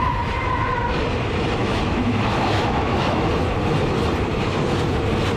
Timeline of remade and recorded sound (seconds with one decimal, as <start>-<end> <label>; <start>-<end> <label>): 0.0-1.6 recorded; 1.6-3.2 remade; 3.2-5.4 recorded